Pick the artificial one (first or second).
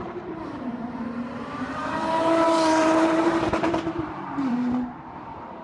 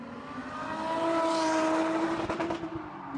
first